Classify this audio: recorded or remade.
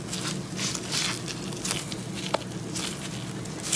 recorded